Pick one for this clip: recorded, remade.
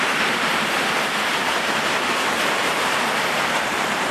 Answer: remade